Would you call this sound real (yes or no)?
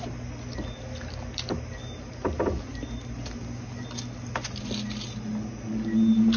yes